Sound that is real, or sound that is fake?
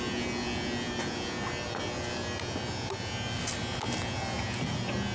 real